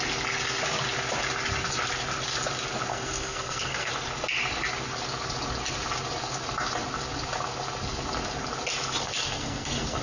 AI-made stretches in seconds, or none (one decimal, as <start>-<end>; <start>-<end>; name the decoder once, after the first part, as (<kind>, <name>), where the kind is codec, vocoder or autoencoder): 2.9-3.9 (codec, SNAC); 9.0-10.0